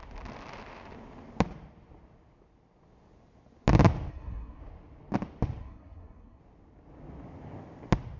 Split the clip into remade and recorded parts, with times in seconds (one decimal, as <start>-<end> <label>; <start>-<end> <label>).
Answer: 0.0-4.1 recorded; 4.1-4.6 remade; 4.6-5.6 recorded; 5.6-6.4 remade; 6.4-8.2 recorded